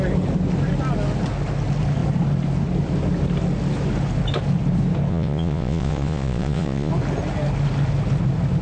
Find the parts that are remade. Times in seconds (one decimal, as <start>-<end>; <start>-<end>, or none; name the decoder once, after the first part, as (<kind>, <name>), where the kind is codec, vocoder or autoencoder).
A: 5.1-6.9 (vocoder, Vocos)